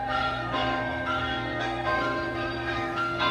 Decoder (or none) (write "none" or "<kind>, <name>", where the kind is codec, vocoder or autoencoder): codec, SNAC